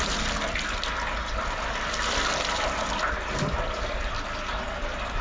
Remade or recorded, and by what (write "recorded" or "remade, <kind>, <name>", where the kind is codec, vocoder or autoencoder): recorded